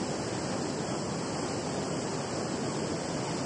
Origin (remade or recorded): recorded